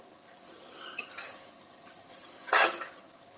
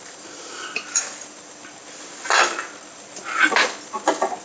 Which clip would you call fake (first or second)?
first